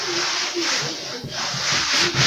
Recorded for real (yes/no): yes